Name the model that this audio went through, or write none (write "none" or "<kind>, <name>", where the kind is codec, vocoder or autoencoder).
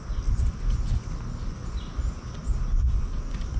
none